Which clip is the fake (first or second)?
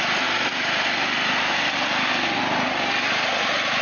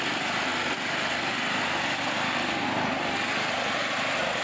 second